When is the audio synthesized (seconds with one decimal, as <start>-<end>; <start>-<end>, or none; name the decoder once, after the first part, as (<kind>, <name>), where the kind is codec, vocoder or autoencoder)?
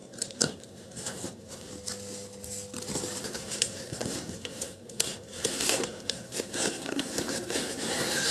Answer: 0.0-1.7 (codec, SNAC); 3.2-8.3